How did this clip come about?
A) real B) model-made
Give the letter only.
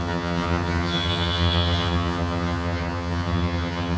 B